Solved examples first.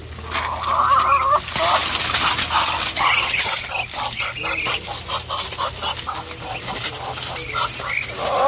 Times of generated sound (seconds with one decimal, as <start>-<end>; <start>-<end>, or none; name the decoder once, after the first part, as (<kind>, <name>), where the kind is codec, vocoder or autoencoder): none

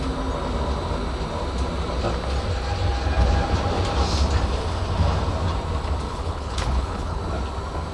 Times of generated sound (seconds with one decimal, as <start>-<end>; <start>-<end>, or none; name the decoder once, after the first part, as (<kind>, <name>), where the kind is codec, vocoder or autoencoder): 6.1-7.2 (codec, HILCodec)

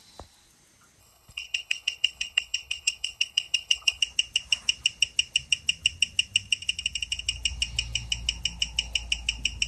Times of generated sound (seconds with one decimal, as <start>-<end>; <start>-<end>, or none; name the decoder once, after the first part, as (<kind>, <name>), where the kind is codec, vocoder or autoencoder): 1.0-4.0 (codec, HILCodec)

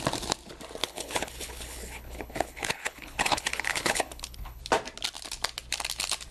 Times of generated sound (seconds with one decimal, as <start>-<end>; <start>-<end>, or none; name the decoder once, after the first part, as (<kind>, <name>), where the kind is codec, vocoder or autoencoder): 0.8-4.6 (codec, HILCodec)

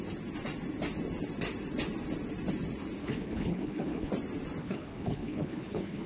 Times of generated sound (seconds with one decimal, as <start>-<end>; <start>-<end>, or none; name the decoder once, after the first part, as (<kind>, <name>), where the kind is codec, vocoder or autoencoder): 3.0-4.1 (codec, HILCodec); 4.6-6.1

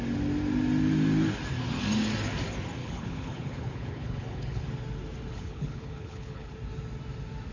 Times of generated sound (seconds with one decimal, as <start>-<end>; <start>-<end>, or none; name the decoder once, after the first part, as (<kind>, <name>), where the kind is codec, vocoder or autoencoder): 2.8-4.7 (codec, HILCodec); 5.3-6.5

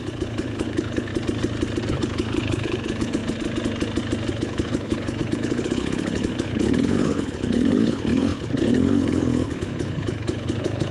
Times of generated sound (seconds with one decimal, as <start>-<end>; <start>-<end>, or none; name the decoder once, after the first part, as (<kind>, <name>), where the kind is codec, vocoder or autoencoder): 0.0-1.1 (codec, HILCodec); 1.9-3.2; 4.3-10.9